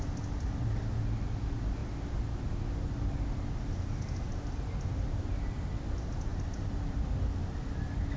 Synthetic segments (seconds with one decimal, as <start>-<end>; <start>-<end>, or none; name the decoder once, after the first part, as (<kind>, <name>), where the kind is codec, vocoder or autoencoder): none

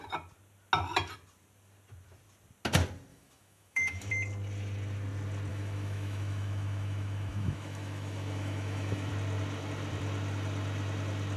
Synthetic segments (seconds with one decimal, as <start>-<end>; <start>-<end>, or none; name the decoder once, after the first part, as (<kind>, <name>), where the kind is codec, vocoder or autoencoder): 3.1-4.1 (autoencoder, DAC-VAE); 5.5-9.1

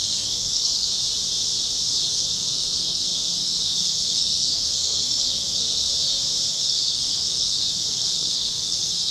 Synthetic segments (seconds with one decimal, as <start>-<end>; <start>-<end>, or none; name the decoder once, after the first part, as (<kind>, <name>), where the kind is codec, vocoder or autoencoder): 0.0-0.9 (codec, SNAC); 2.1-5.9; 6.5-9.1

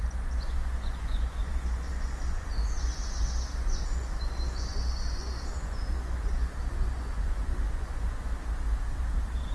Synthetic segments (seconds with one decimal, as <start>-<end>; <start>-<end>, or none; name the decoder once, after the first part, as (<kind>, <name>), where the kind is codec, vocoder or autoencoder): 0.0-8.3 (vocoder, Vocos); 8.9-9.5

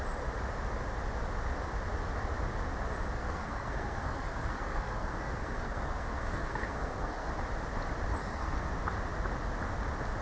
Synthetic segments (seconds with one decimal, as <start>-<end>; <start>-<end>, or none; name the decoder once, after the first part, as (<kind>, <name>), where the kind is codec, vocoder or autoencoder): 3.2-7.3 (codec, SNAC); 8.2-8.7

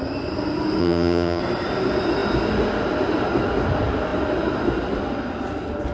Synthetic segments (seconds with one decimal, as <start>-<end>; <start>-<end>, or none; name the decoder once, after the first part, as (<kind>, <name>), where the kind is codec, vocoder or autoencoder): 0.8-1.4 (vocoder, HiFi-GAN)